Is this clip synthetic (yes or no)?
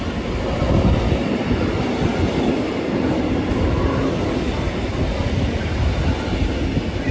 no